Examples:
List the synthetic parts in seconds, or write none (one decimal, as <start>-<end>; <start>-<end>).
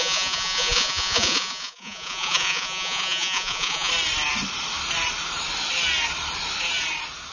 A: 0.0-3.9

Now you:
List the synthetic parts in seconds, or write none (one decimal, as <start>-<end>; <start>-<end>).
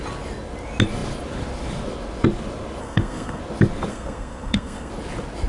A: 2.8-3.4; 3.9-4.9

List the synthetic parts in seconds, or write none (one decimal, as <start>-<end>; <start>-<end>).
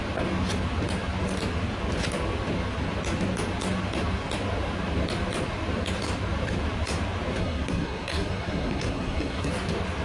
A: 7.4-9.5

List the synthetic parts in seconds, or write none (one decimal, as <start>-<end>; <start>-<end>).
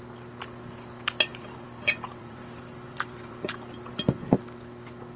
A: 1.3-3.5